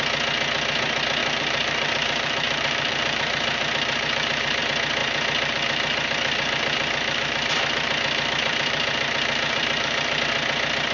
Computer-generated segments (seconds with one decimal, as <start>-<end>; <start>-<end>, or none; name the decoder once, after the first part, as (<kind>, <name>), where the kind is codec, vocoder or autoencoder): 1.2-4.6 (vocoder, BigVGAN v2); 5.0-10.2